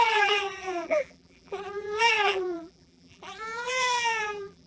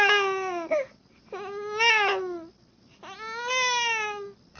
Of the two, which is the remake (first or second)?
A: first